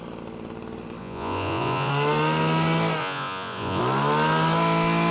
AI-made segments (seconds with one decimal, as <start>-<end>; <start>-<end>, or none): 1.0-1.9; 3.0-3.8